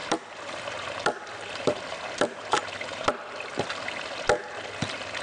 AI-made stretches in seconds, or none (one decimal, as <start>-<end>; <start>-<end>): 0.0-3.1